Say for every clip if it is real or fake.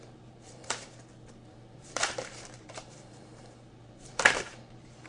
fake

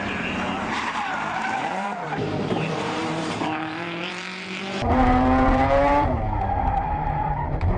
fake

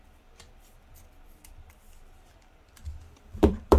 fake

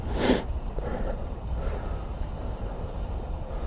fake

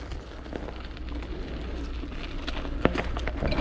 real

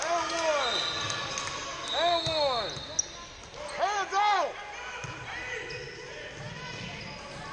real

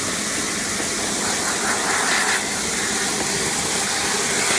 real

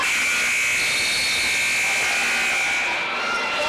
real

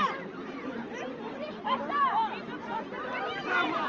fake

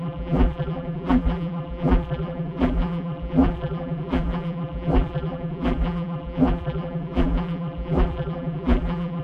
fake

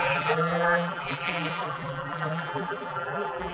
fake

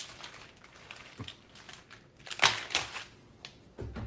real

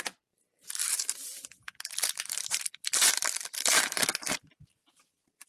fake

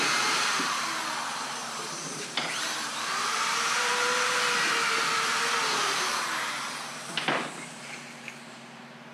fake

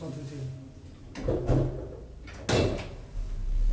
real